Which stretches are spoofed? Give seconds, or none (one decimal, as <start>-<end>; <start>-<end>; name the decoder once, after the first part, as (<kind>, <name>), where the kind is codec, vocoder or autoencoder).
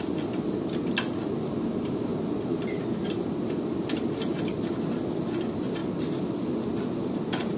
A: none